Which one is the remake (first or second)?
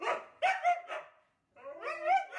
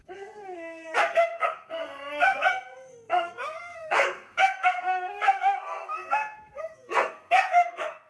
second